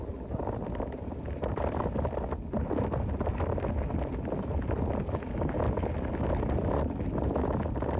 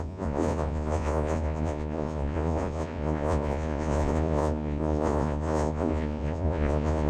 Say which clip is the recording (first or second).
first